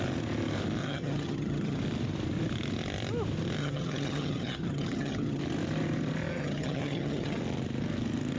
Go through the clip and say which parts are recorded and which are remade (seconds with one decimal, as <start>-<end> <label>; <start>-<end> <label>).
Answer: 0.0-0.8 recorded; 0.8-1.8 remade; 1.8-3.6 recorded; 3.6-5.4 remade; 5.4-6.3 recorded; 6.3-7.4 remade; 7.4-8.4 recorded